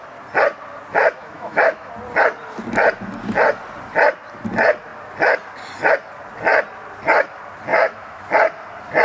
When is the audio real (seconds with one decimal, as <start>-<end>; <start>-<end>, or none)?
0.0-1.0; 1.9-7.7; 8.3-9.0